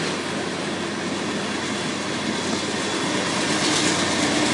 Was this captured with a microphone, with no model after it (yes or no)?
yes